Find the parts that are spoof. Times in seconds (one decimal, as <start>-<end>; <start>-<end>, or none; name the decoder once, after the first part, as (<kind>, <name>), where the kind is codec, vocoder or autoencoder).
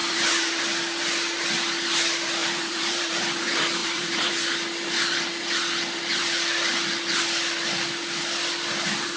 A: 0.0-0.6 (vocoder, BigVGAN v2); 2.4-3.3; 3.8-4.3